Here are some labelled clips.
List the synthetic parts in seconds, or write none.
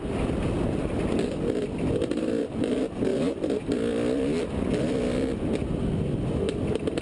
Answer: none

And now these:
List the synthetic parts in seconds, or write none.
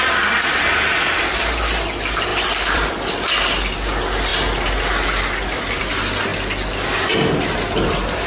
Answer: 2.3-3.3 (vocoder, BigVGAN v2)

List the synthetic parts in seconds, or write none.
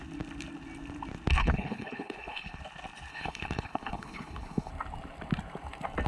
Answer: 1.4-2.6 (codec, HILCodec); 3.1-4.7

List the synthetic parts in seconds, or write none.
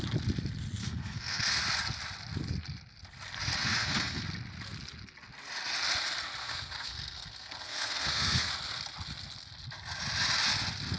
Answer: 0.8-1.6 (codec, SNAC); 3.6-4.2; 6.4-8.5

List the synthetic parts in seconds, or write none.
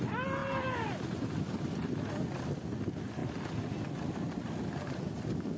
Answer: 3.2-4.3 (vocoder, BigVGAN v2)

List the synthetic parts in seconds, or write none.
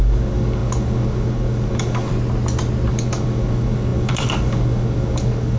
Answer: 0.0-2.1 (codec, DAC); 2.9-5.6